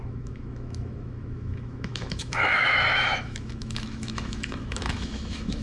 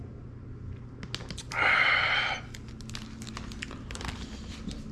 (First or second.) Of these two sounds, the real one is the second